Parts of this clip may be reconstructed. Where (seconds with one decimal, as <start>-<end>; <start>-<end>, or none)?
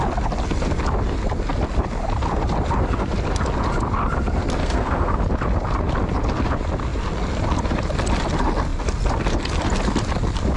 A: 4.6-5.2